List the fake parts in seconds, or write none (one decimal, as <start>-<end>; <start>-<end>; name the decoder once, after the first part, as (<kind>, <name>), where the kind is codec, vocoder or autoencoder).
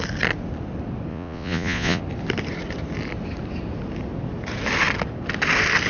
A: 1.1-2.0 (vocoder, Vocos)